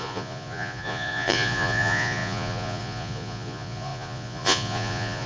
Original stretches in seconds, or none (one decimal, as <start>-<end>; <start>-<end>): none